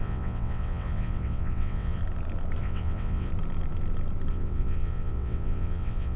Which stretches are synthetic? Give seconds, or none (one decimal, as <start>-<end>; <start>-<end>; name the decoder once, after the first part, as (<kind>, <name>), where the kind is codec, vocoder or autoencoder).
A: 0.0-2.0 (vocoder, WaveNeXt); 2.6-3.3; 4.3-6.2